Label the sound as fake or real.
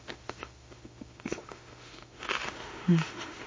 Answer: fake